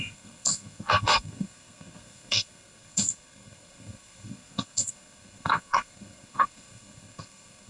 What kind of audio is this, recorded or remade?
remade